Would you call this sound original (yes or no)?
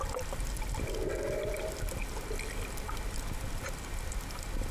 yes